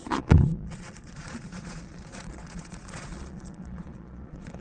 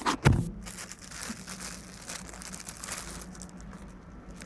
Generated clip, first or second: first